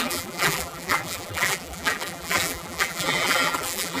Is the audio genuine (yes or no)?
no